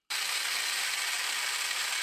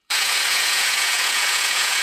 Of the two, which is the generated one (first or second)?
second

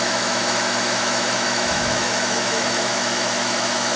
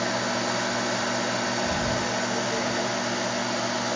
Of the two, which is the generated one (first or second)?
first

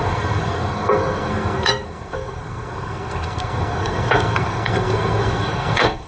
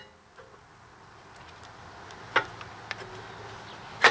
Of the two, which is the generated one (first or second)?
first